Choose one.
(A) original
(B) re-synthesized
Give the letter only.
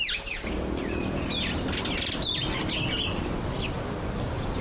A